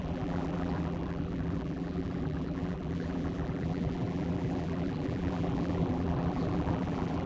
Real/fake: fake